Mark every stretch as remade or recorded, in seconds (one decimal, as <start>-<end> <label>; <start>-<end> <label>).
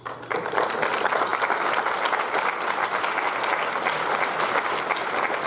0.0-5.5 recorded